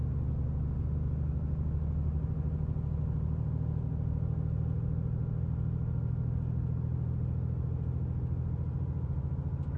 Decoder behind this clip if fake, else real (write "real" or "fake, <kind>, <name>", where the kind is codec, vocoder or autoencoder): real